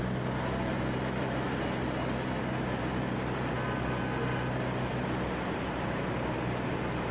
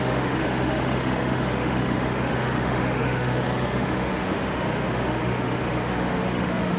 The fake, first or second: second